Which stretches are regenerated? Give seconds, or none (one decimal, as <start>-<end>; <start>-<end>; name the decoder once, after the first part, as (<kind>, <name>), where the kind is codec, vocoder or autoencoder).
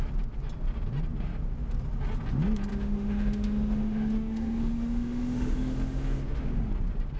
2.7-6.7 (autoencoder, DAC-VAE)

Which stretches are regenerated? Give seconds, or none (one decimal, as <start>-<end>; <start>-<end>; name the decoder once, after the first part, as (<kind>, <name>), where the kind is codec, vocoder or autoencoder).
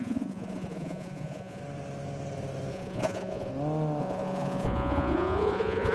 0.0-1.6 (vocoder, Vocos); 2.7-3.5; 4.0-5.9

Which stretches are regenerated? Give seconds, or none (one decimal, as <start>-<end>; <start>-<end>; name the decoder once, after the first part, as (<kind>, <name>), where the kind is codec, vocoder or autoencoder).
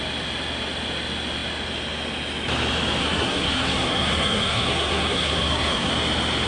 3.0-5.9 (codec, SNAC)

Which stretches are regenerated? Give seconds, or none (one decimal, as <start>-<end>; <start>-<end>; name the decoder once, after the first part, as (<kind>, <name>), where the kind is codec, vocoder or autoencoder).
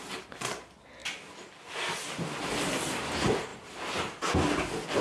none